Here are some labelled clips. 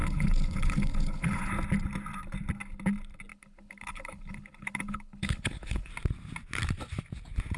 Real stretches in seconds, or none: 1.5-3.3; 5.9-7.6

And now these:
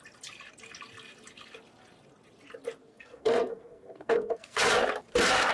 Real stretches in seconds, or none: 0.0-2.8; 4.6-5.5

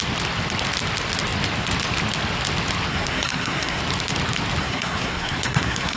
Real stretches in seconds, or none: 0.0-2.9; 3.8-4.6

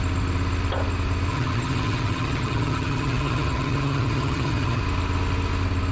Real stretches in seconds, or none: 0.0-1.3; 4.8-5.9

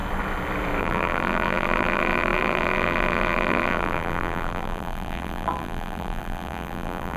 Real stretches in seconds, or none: 0.0-0.8

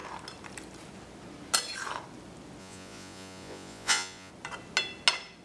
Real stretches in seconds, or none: 0.0-2.6; 4.3-5.4

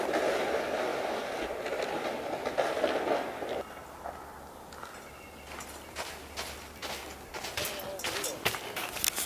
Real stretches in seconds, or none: 0.0-9.3